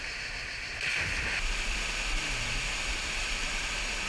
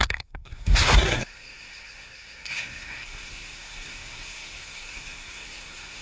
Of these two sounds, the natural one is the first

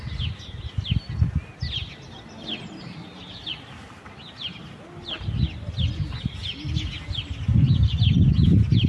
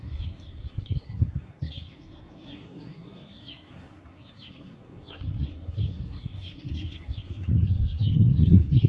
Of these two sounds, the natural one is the first